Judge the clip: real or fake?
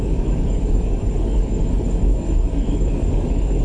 fake